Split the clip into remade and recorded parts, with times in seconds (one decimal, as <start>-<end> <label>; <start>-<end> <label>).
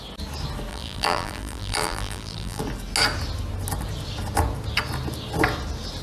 0.0-0.7 recorded; 0.7-2.6 remade; 2.6-6.0 recorded